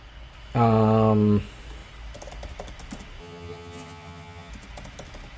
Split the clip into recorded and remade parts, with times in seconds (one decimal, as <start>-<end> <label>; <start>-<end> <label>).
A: 0.0-3.2 recorded; 3.2-4.5 remade; 4.5-5.4 recorded